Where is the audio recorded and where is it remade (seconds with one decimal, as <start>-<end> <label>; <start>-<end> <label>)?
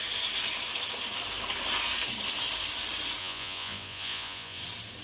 0.0-3.2 recorded; 3.2-4.6 remade; 4.6-5.0 recorded